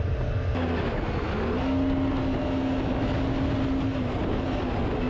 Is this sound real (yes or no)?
yes